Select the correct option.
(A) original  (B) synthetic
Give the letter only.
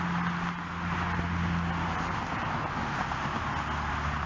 A